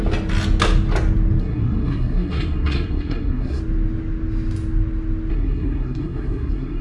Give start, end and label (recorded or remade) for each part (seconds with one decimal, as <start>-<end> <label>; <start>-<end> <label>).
0.0-1.4 recorded; 1.4-3.6 remade; 3.6-5.3 recorded; 5.3-6.8 remade